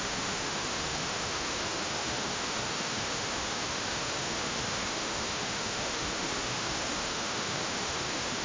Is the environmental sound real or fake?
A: fake